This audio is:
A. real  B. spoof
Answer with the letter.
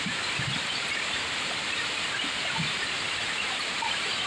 B